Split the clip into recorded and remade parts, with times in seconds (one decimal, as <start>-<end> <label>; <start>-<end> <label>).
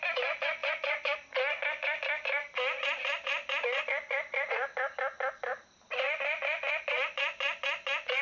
0.0-8.2 recorded